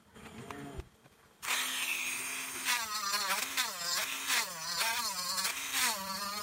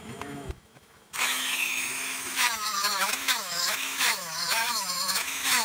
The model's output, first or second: second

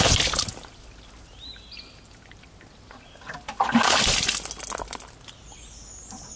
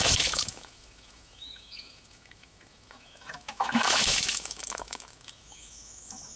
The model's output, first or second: second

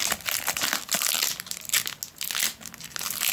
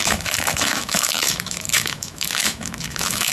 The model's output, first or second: second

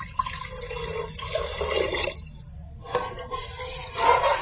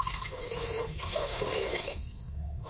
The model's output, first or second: second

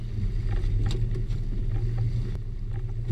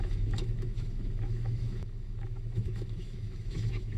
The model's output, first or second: second